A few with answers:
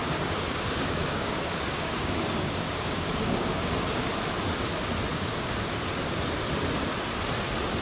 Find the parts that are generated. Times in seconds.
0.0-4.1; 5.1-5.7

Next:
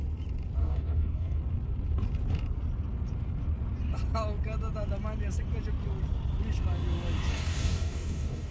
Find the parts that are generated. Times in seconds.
0.6-1.4; 7.3-8.5

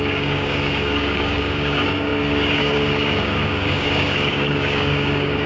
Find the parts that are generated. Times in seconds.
0.0-5.5